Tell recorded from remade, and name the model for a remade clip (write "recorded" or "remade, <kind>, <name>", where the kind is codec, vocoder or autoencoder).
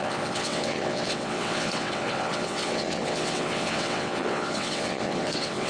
remade, vocoder, WaveNeXt